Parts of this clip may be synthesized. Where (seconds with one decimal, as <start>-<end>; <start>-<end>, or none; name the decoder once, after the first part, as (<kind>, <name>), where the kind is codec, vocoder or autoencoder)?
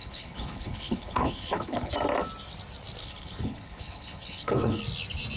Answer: 0.0-1.9 (codec, HILCodec); 3.0-4.8